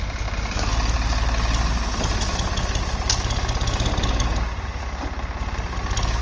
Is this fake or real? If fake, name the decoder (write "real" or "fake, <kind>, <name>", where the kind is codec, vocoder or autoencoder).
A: real